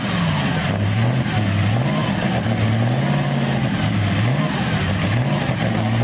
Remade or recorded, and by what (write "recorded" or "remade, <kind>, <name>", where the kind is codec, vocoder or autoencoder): recorded